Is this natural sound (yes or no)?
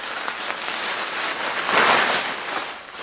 yes